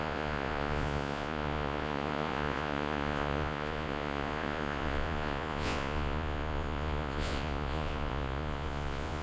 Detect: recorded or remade remade